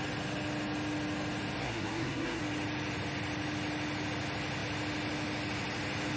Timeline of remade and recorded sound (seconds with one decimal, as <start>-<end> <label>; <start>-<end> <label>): 0.0-1.6 recorded; 1.6-2.4 remade; 2.4-6.2 recorded